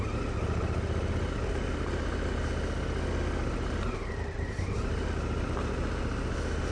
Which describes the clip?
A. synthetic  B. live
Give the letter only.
B